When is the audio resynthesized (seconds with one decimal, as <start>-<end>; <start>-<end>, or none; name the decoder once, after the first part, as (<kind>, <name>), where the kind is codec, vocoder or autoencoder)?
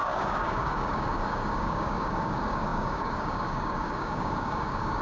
0.0-5.0 (codec, DAC)